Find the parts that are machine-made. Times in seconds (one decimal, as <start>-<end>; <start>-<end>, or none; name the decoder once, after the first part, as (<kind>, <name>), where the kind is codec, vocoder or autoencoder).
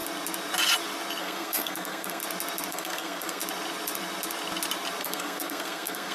1.2-2.2 (codec, SNAC); 2.7-3.4; 5.0-6.1